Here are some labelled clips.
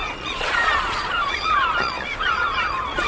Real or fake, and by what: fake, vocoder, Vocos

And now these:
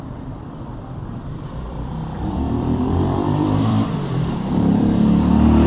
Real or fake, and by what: fake, vocoder, BigVGAN v2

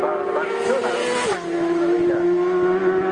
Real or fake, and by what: real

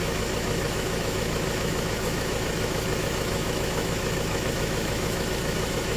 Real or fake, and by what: fake, autoencoder, DAC-VAE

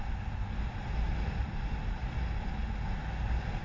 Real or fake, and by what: real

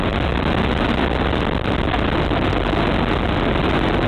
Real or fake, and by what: real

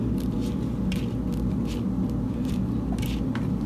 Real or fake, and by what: real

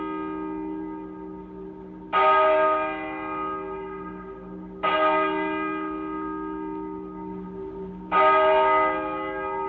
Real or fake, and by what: real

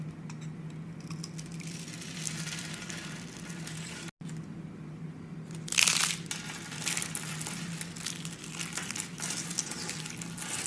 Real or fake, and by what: real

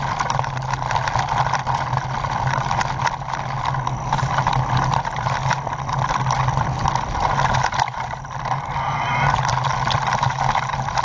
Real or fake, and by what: real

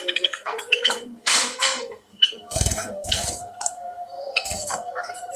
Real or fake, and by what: fake, codec, SNAC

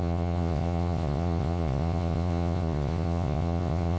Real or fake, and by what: fake, vocoder, Vocos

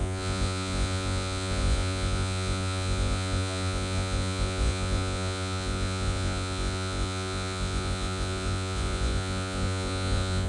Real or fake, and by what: fake, vocoder, Vocos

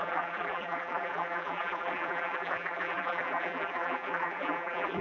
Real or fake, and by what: fake, vocoder, BigVGAN v2